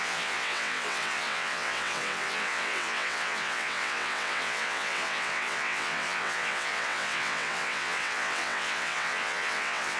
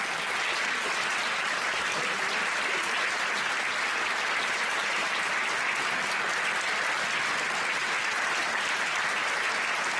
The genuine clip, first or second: second